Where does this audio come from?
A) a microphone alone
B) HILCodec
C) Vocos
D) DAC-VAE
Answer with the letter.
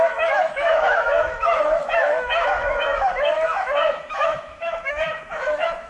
D